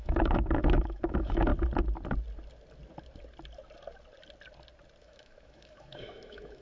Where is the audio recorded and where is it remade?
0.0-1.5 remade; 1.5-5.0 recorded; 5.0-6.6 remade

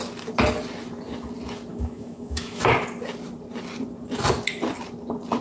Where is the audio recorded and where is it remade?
0.0-1.7 recorded; 1.7-2.6 remade; 2.6-5.4 recorded

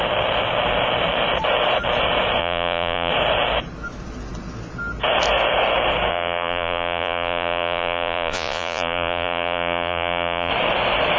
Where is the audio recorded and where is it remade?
0.0-2.4 recorded; 2.4-3.1 remade; 3.1-6.1 recorded; 6.1-10.5 remade; 10.5-11.2 recorded